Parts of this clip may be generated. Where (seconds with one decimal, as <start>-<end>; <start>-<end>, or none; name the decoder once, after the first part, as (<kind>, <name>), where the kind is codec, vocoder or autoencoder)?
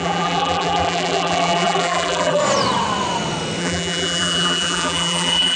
0.0-2.4 (vocoder, BigVGAN v2); 3.6-5.6